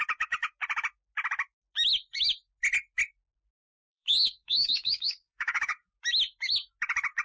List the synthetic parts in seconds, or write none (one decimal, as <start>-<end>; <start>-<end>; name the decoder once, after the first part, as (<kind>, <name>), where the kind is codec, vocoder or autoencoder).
3.5-5.9 (codec, DAC)